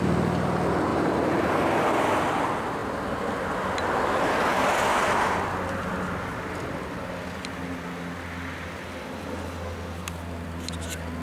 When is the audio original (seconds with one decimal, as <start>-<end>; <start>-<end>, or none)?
0.0-0.9; 1.5-11.2